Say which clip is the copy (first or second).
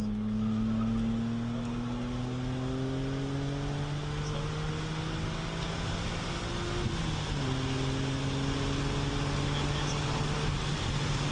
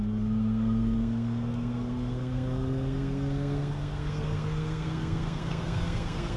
second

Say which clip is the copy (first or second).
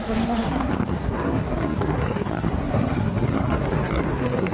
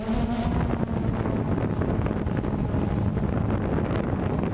first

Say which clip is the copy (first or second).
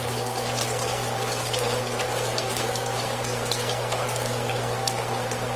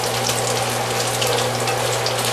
first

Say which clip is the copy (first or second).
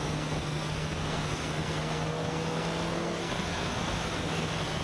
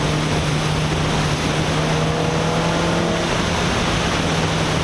first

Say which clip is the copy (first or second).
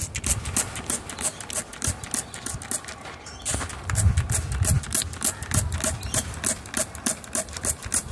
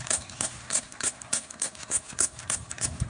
second